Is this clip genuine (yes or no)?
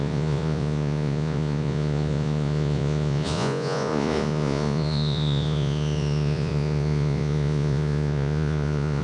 no